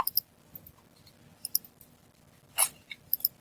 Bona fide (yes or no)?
yes